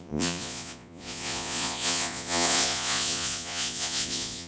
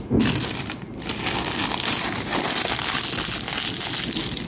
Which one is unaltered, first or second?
second